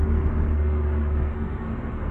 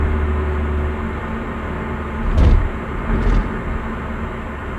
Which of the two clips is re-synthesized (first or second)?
first